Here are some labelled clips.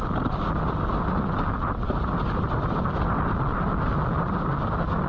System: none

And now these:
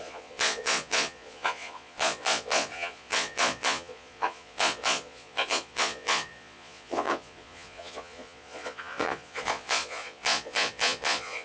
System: vocoder, Vocos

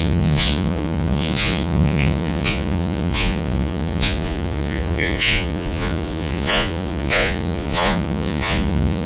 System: vocoder, Vocos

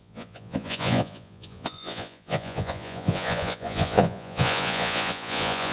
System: vocoder, Vocos